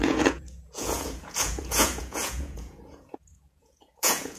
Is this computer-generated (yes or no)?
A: yes